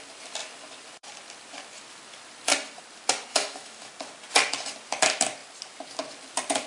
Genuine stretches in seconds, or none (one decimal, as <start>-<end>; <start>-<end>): 0.0-3.3; 3.9-6.7